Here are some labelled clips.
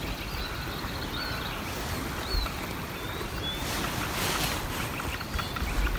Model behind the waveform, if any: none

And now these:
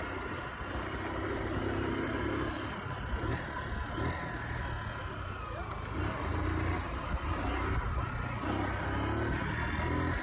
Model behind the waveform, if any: none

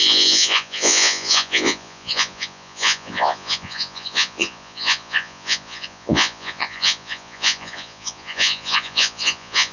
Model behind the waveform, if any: vocoder, Vocos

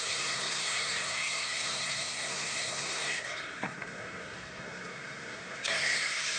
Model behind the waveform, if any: codec, SNAC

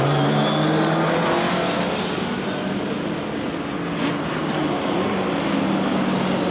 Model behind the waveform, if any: none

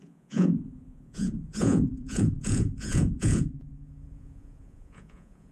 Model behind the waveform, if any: vocoder, Vocos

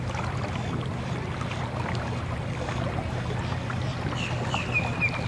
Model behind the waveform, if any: none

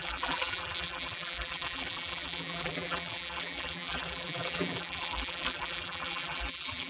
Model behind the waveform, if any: vocoder, BigVGAN v2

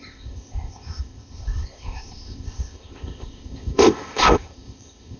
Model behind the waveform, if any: codec, ZipCodec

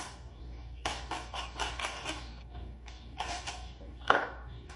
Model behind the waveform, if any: codec, DAC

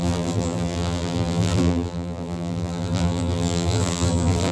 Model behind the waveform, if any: vocoder, BigVGAN v2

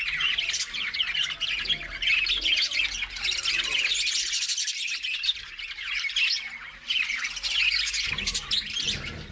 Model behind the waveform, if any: none